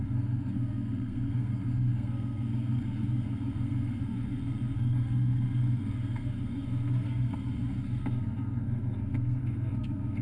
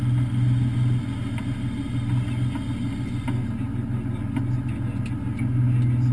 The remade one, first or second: first